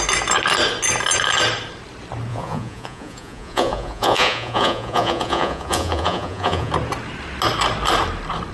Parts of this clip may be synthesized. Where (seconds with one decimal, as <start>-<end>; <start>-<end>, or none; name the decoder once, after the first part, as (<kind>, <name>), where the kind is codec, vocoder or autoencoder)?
2.3-6.7 (vocoder, Vocos)